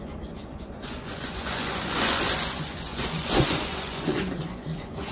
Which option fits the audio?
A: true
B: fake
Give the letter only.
B